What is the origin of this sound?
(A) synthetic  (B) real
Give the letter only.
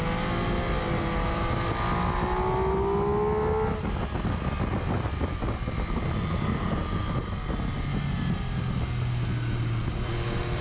B